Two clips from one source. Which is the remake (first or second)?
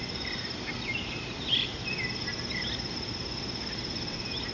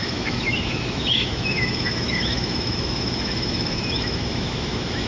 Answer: second